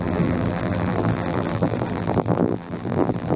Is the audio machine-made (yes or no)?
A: yes